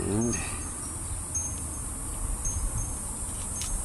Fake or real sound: real